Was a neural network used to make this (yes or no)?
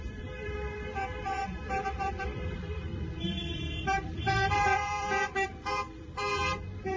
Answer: yes